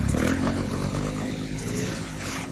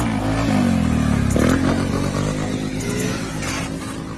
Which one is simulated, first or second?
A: first